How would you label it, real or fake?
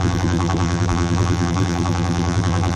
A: fake